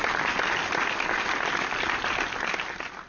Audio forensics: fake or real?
real